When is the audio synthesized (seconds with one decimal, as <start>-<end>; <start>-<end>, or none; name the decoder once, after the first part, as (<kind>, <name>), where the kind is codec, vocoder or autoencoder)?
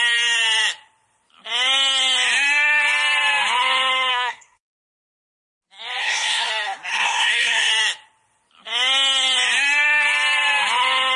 4.1-4.9 (codec, SNAC); 6.0-6.5; 6.9-7.7